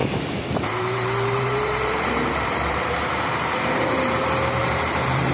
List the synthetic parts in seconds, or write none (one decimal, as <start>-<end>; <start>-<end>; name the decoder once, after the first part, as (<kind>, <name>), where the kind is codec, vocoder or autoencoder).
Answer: 0.0-3.2 (vocoder, BigVGAN v2); 4.6-5.3